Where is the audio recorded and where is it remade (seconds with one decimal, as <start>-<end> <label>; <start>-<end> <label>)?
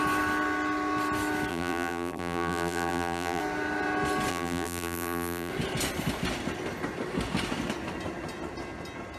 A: 0.0-1.5 recorded; 1.5-3.4 remade; 3.4-4.3 recorded; 4.3-5.5 remade; 5.5-9.2 recorded